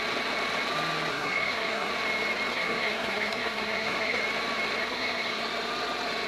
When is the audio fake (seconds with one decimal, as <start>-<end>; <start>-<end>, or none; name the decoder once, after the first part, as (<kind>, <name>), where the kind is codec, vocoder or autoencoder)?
1.1-1.9 (codec, SNAC); 2.5-4.2; 4.8-5.4